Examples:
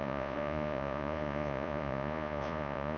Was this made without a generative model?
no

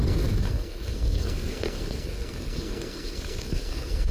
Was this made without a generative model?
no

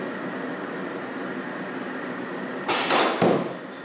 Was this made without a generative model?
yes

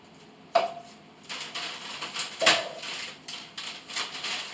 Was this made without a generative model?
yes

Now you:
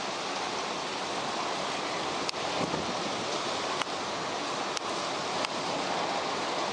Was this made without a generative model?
yes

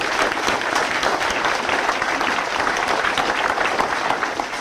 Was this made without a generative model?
yes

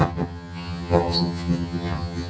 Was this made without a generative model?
no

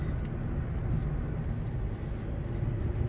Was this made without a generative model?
yes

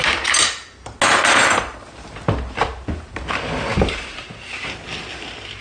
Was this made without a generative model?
yes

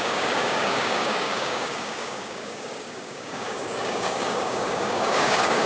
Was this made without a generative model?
no